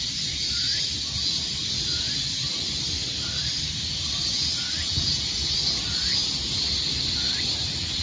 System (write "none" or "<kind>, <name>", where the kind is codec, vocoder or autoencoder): none